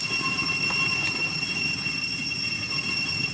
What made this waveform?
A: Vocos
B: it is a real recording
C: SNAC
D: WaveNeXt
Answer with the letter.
B